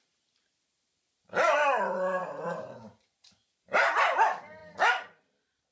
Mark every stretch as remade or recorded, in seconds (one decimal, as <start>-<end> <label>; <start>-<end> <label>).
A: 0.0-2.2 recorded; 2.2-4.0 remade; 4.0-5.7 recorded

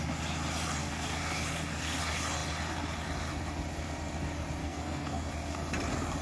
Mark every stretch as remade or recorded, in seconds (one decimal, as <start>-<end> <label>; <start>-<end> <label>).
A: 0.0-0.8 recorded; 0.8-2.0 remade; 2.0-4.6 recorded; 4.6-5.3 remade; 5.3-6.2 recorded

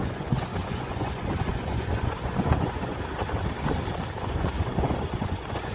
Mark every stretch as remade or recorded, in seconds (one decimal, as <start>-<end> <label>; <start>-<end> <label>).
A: 0.0-2.9 remade; 2.9-4.2 recorded; 4.2-5.7 remade

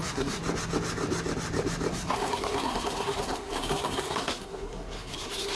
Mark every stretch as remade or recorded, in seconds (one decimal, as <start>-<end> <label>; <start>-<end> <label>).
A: 0.0-0.4 remade; 0.4-1.9 recorded; 1.9-5.6 remade

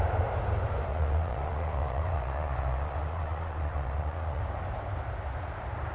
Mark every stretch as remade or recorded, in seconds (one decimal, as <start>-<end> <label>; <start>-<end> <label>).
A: 0.0-0.9 recorded; 0.9-4.4 remade; 4.4-5.9 recorded

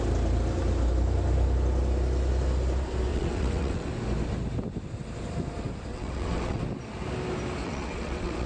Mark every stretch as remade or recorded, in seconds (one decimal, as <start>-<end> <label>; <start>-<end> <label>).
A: 0.0-3.1 recorded; 3.1-3.9 remade; 3.9-5.9 recorded; 5.9-6.6 remade; 6.6-7.6 recorded; 7.6-8.5 remade